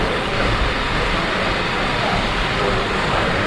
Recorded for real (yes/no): no